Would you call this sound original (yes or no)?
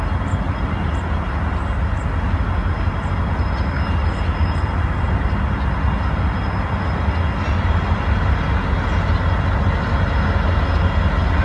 yes